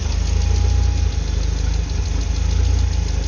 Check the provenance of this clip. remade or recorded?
recorded